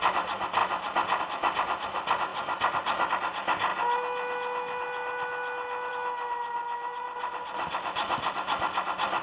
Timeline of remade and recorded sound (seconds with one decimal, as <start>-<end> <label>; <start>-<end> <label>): 0.0-9.2 recorded